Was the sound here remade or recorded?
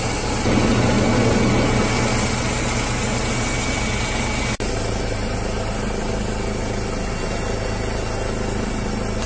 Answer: recorded